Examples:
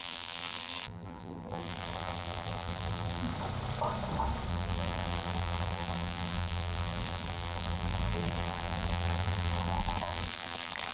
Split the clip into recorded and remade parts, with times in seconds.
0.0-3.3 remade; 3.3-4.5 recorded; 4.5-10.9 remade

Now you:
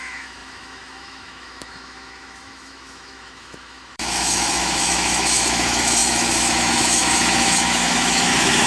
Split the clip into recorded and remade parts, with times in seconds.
0.0-8.7 remade

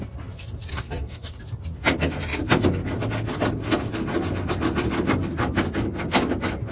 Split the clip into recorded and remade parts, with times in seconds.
0.0-0.7 recorded; 0.7-1.4 remade; 1.4-6.7 recorded

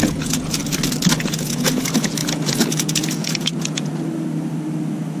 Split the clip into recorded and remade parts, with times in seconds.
0.0-0.6 remade; 0.6-1.2 recorded; 1.2-3.9 remade; 3.9-5.2 recorded

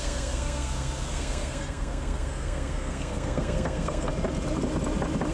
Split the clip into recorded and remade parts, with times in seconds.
0.0-4.1 remade; 4.1-5.3 recorded

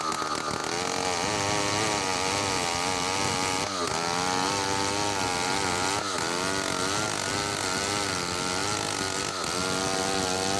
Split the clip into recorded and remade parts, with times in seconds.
0.0-10.6 recorded